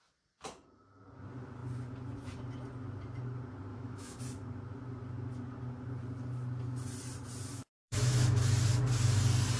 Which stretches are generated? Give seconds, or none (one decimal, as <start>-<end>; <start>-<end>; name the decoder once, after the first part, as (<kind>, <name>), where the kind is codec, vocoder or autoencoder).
3.7-4.2 (autoencoder, DAC-VAE); 7.5-8.4